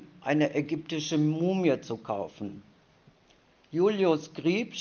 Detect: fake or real real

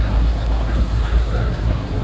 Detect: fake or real fake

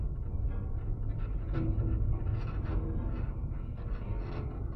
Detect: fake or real real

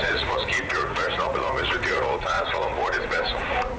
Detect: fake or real fake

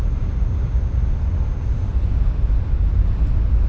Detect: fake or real real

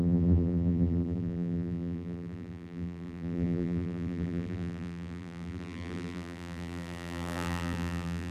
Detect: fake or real fake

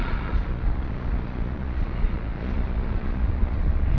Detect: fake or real fake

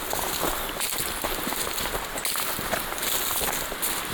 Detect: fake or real real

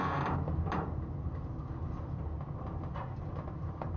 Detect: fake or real real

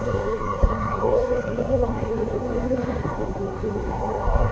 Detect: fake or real fake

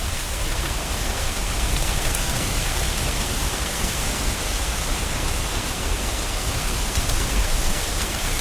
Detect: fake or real fake